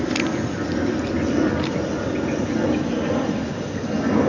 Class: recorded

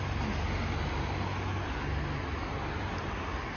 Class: recorded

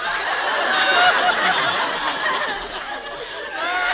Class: recorded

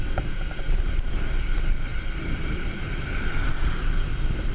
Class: recorded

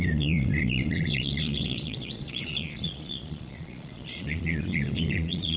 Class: remade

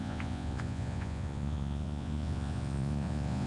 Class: remade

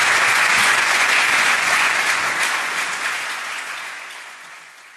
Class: remade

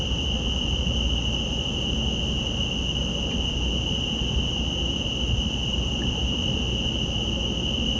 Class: recorded